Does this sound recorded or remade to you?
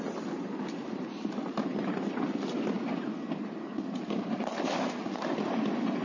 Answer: recorded